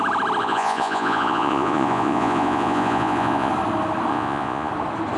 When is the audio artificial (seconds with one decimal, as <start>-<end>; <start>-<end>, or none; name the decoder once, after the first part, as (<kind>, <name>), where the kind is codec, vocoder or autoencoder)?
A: 0.4-3.5 (vocoder, Vocos); 4.1-4.7

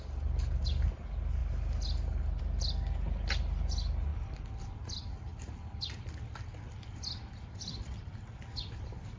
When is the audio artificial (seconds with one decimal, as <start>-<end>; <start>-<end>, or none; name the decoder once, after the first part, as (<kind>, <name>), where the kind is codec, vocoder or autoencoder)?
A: none

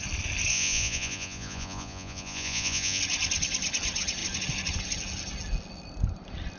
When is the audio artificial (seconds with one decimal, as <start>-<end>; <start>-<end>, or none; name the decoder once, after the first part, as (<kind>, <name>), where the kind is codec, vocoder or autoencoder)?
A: 0.5-3.0 (vocoder, Vocos)

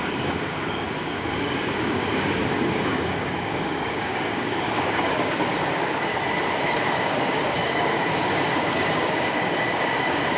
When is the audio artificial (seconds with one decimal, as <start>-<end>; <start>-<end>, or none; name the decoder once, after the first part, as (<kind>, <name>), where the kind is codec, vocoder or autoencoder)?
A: 0.0-6.1 (codec, DAC); 6.6-10.4

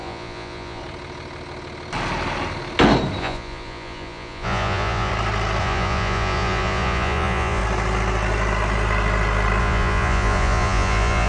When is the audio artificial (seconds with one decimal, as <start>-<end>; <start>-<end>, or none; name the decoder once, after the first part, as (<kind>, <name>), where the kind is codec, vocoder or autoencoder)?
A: 0.0-0.8 (vocoder, Vocos); 3.2-5.1; 5.6-7.6; 9.6-11.3

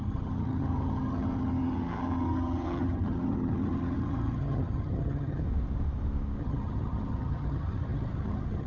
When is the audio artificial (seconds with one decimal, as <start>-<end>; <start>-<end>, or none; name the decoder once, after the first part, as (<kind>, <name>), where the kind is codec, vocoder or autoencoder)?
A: 0.0-5.4 (vocoder, HiFi-GAN); 6.4-8.7